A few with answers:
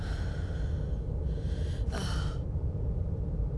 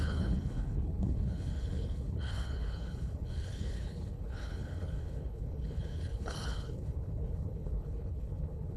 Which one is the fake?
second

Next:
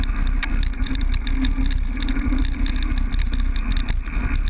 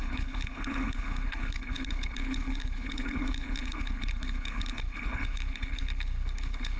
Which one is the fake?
second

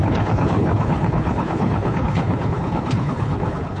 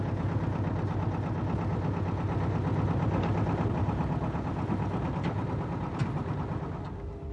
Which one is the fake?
first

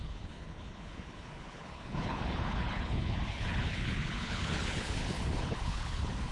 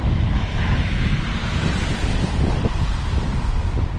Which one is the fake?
first